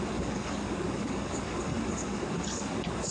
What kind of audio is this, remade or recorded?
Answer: remade